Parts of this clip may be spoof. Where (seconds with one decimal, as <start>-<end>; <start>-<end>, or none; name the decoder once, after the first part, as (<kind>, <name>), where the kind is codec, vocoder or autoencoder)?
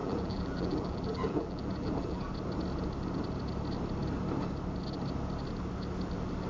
0.0-2.3 (vocoder, BigVGAN v2)